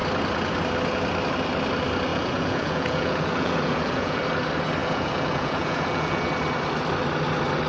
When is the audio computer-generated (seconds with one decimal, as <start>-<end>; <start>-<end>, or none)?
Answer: 2.1-4.2; 4.8-6.3